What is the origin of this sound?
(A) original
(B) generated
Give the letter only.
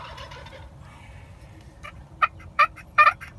B